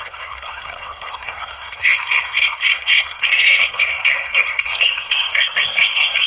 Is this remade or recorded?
remade